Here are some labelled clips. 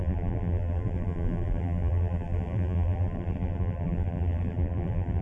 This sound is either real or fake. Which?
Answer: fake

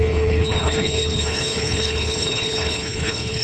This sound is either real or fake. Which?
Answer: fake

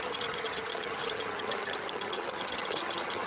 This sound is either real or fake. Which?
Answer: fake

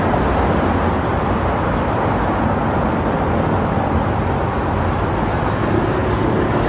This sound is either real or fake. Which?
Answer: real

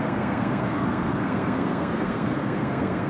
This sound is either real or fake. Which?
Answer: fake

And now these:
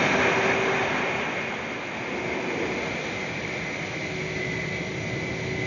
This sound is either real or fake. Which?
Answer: real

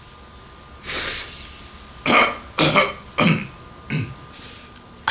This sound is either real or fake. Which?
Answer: real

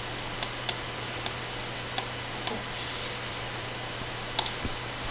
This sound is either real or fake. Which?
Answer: real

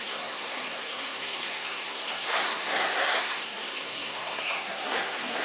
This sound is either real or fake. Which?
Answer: fake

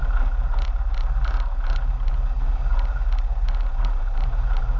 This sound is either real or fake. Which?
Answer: fake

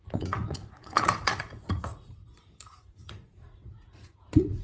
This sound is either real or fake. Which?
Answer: fake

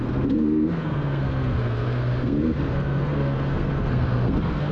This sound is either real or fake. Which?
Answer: fake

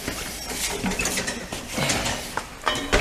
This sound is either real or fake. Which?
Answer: real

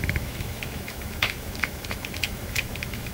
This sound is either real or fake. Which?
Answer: fake